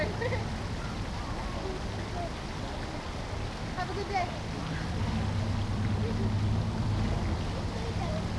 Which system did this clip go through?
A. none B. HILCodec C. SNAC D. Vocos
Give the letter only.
A